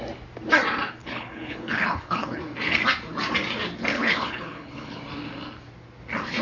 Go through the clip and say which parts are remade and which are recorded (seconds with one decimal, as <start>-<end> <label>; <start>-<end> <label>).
0.0-1.0 recorded; 1.0-2.4 remade; 2.4-3.9 recorded; 3.9-5.0 remade; 5.0-6.4 recorded